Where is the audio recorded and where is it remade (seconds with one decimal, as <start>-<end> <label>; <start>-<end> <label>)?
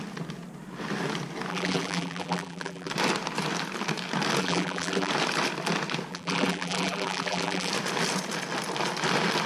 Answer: 0.0-1.5 recorded; 1.5-2.9 remade; 2.9-4.4 recorded; 4.4-5.1 remade; 5.1-6.1 recorded; 6.1-7.7 remade; 7.7-9.5 recorded